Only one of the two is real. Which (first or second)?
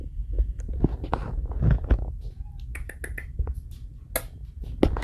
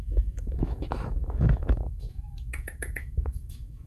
first